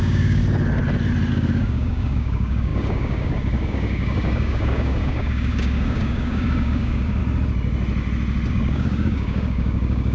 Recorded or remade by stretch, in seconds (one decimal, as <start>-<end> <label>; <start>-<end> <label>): 0.0-0.4 remade; 0.4-1.3 recorded; 1.3-7.2 remade; 7.2-8.5 recorded; 8.5-10.1 remade